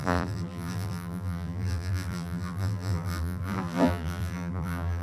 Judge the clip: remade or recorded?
remade